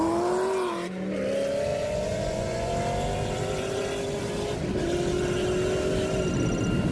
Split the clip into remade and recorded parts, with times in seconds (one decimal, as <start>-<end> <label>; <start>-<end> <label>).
0.0-1.7 recorded; 1.7-2.7 remade; 2.7-6.9 recorded